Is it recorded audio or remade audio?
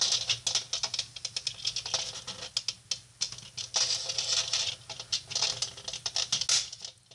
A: recorded